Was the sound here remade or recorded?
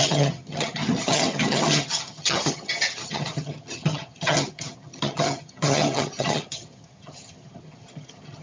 remade